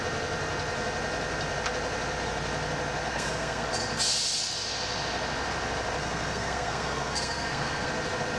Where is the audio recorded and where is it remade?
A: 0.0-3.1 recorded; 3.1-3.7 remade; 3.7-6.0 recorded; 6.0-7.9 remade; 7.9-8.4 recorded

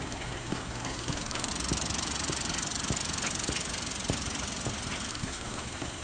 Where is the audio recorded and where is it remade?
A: 0.0-1.5 remade; 1.5-5.1 recorded; 5.1-6.0 remade

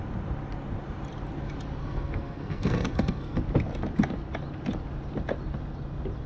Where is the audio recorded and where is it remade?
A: 0.0-1.8 recorded; 1.8-3.4 remade; 3.4-6.3 recorded

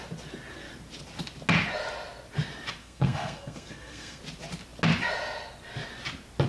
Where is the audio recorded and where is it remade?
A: 0.0-2.8 recorded; 2.8-4.2 remade; 4.2-6.5 recorded

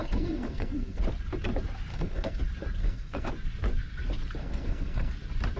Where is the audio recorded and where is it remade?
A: 0.0-1.0 remade; 1.0-1.9 recorded; 1.9-2.4 remade; 2.4-2.8 recorded; 2.8-3.3 remade; 3.3-4.4 recorded; 4.4-5.1 remade; 5.1-5.6 recorded